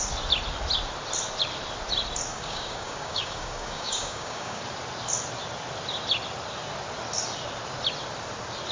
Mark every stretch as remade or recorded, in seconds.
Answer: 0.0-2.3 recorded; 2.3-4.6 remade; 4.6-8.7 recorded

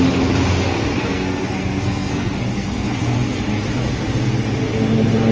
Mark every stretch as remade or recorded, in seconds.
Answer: 0.0-0.9 recorded; 0.9-3.4 remade; 3.4-5.3 recorded